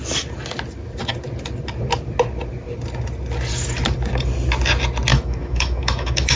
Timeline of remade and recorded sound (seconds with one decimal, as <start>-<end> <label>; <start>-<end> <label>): 0.0-5.1 recorded; 5.1-6.4 remade